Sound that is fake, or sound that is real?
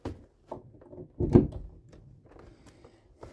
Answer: real